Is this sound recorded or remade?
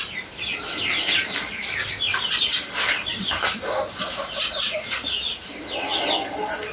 recorded